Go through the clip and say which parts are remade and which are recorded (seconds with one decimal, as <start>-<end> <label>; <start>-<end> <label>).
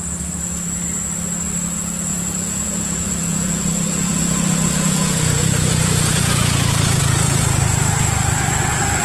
0.0-2.1 recorded; 2.1-7.0 remade; 7.0-9.0 recorded